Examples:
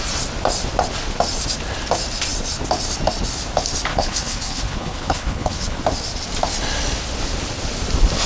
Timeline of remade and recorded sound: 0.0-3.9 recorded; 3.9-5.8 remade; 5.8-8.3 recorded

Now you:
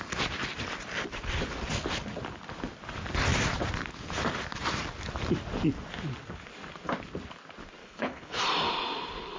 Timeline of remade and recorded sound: 0.0-7.8 recorded; 7.8-8.4 remade; 8.4-9.4 recorded

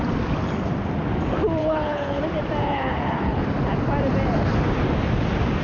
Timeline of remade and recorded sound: 0.0-1.6 recorded; 1.6-2.2 remade; 2.2-2.6 recorded; 2.6-3.4 remade; 3.4-5.6 recorded

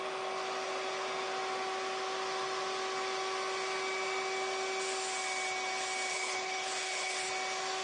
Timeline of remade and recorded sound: 0.0-6.1 recorded; 6.1-7.3 remade; 7.3-7.8 recorded